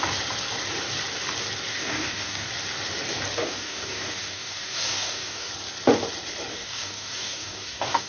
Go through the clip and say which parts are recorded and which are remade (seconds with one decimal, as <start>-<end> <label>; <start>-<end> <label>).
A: 0.0-1.7 recorded; 1.7-2.5 remade; 2.5-3.4 recorded; 3.4-5.5 remade; 5.5-6.5 recorded; 6.5-8.1 remade